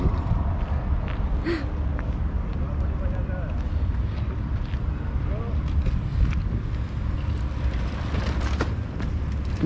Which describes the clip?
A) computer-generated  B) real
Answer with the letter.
B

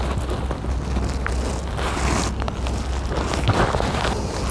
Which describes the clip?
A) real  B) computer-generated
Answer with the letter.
A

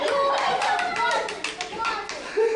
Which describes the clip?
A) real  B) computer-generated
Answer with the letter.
A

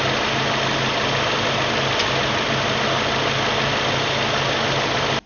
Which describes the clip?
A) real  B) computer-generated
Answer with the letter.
A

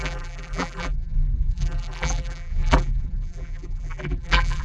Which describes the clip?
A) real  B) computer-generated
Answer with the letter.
B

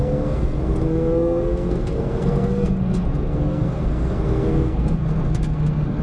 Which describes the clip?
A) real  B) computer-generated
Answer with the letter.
B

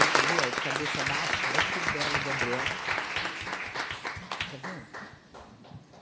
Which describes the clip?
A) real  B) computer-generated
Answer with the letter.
A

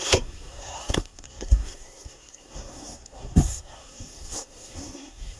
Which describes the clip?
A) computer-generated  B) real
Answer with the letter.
A